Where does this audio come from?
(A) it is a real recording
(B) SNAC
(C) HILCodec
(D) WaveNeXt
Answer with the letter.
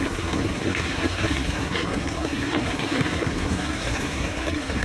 B